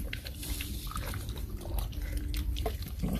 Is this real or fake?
fake